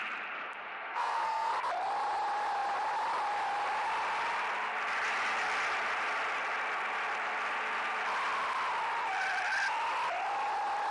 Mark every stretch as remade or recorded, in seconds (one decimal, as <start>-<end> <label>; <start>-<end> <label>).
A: 0.0-0.9 recorded; 0.9-1.5 remade; 1.5-10.9 recorded